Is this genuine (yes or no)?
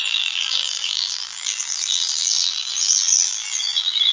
no